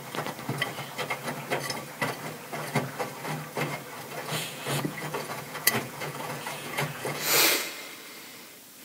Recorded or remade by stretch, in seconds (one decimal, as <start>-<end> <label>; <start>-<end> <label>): 0.0-4.2 recorded; 4.2-7.7 remade; 7.7-8.8 recorded